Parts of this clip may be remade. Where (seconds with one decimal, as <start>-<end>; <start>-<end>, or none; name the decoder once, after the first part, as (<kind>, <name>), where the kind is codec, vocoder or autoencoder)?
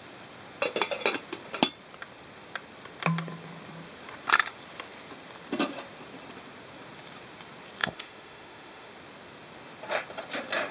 7.8-8.9 (autoencoder, DAC-VAE)